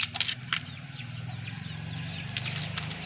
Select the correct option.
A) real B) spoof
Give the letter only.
A